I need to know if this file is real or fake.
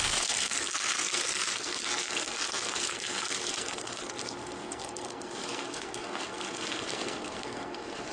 fake